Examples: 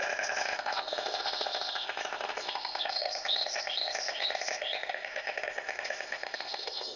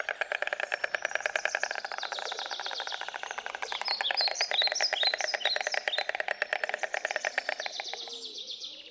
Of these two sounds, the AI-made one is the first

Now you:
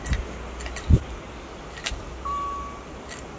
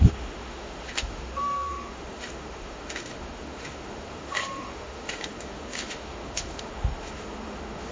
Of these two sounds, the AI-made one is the second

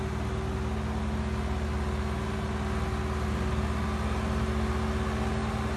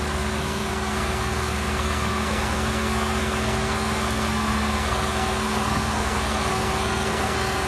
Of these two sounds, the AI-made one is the second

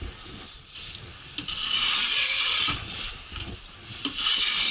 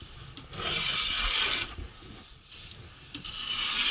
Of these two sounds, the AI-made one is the first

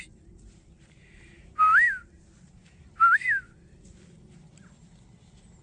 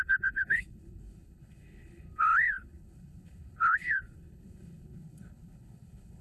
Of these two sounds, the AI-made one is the second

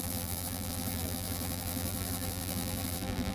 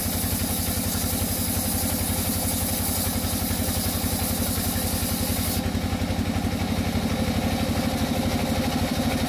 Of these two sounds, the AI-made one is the first